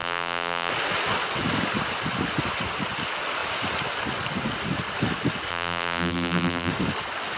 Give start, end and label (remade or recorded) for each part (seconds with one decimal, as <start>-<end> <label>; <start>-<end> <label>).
0.0-0.7 remade; 0.7-5.5 recorded; 5.5-6.7 remade; 6.7-7.4 recorded